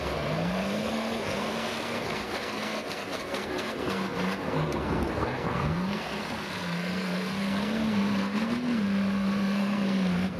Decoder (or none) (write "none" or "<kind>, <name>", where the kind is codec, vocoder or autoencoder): codec, SNAC